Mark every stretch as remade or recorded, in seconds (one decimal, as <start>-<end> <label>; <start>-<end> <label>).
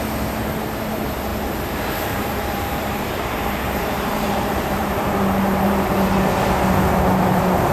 0.0-1.3 recorded; 1.3-5.9 remade; 5.9-7.7 recorded